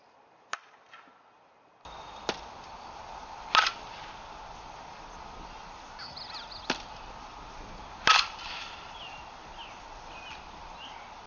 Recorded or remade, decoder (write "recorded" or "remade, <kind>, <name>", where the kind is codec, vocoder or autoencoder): recorded